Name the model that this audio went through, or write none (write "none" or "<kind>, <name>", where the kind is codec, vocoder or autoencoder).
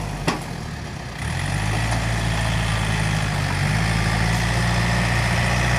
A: none